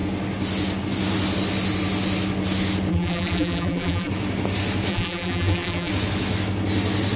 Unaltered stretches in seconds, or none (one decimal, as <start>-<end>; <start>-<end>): 0.0-2.9; 4.1-4.9; 5.9-7.2